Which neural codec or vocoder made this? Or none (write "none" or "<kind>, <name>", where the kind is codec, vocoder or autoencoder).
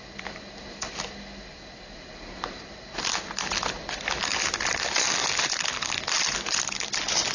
none